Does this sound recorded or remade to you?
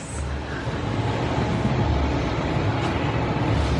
recorded